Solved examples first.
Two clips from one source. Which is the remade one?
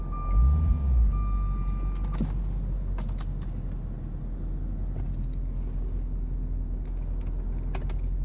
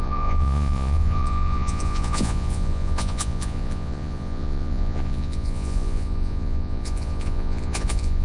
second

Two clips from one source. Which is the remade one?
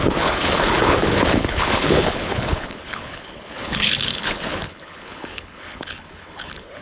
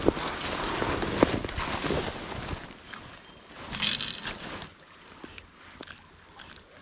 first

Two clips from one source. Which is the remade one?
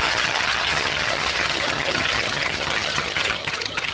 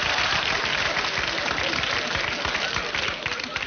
first